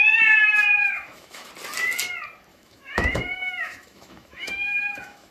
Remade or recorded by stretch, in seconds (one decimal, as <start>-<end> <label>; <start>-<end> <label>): 0.0-0.8 recorded; 0.8-1.5 remade; 1.5-2.5 recorded; 2.5-5.3 remade